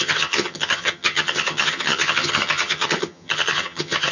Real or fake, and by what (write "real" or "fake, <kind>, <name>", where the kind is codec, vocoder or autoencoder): fake, vocoder, HiFi-GAN